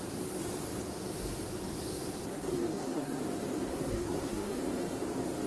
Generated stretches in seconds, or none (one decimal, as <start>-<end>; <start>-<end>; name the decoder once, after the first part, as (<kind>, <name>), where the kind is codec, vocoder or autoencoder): 2.3-3.2 (codec, SNAC); 3.7-4.6